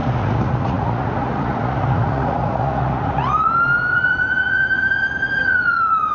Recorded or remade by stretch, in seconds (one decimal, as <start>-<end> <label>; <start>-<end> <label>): 0.0-3.5 remade; 3.5-3.9 recorded; 3.9-6.1 remade